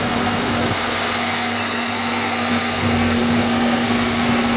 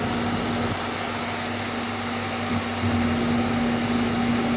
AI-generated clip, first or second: first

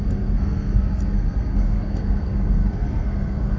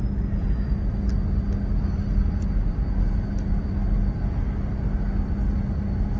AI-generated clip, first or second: first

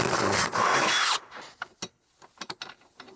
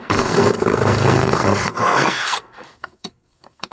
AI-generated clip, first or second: second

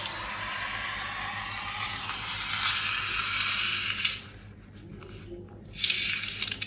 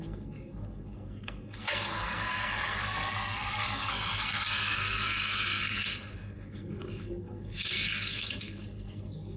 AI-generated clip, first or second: second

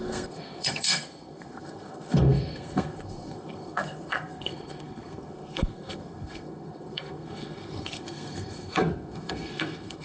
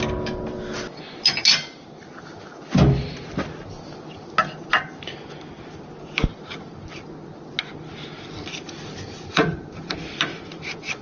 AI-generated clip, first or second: first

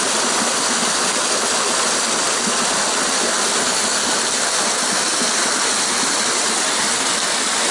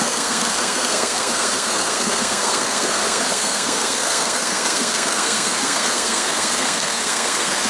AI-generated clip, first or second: second